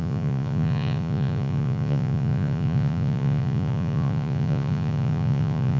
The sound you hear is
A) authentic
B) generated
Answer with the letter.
B